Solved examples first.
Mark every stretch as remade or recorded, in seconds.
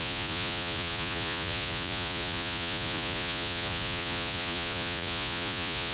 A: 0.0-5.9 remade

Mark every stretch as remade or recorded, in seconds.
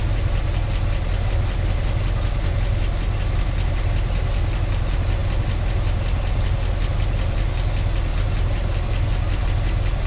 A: 0.0-10.1 recorded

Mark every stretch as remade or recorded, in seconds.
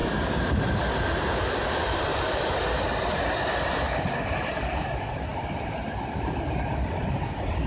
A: 0.0-7.7 recorded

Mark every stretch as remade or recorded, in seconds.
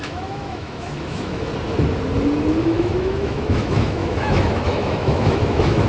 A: 0.0-1.5 remade; 1.5-2.6 recorded; 2.6-5.9 remade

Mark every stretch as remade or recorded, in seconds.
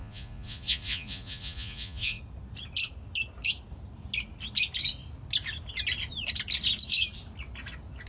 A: 0.0-2.2 remade; 2.2-8.1 recorded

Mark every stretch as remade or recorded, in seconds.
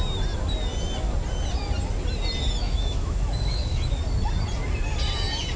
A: 0.0-2.6 recorded; 2.6-4.0 remade; 4.0-5.6 recorded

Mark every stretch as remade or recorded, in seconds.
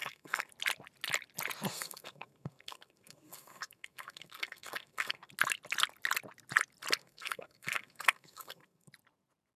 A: 0.0-0.5 remade; 0.5-1.7 recorded; 1.7-5.3 remade; 5.3-7.0 recorded; 7.0-8.9 remade; 8.9-9.6 recorded